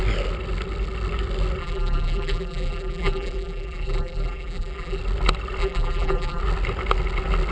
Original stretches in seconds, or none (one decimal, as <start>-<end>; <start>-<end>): 0.0-1.6; 5.0-5.6; 6.4-7.5